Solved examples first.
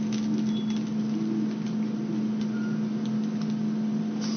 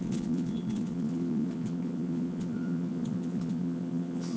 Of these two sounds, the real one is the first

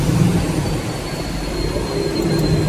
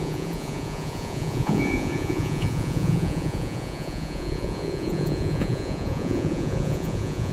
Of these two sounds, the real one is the first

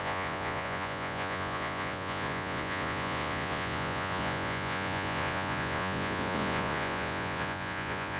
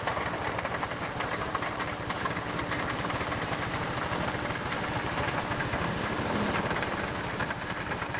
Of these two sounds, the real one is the second